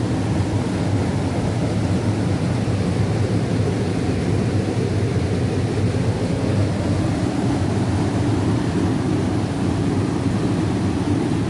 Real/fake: real